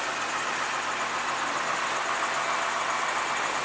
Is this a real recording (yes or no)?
yes